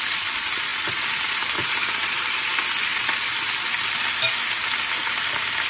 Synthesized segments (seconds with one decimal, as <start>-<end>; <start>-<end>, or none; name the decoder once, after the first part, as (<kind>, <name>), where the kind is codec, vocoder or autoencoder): none